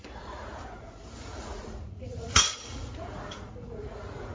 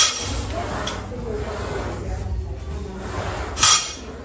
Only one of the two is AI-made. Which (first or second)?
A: first